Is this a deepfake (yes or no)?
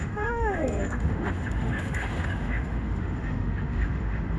yes